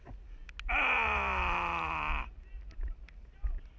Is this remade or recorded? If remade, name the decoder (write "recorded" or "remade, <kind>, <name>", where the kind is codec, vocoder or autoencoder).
recorded